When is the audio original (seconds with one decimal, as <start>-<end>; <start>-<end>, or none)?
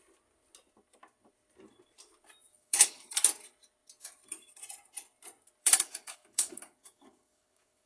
0.0-2.5; 3.1-5.6